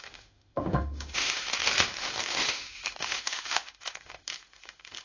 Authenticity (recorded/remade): remade